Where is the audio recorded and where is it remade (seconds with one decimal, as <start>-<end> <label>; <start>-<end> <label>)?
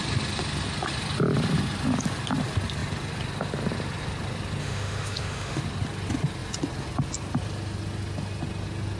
0.0-4.6 recorded; 4.6-5.6 remade; 5.6-9.0 recorded